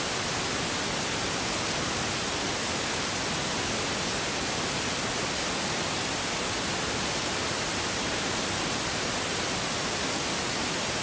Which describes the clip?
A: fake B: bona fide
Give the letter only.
B